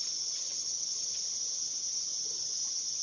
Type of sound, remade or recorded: remade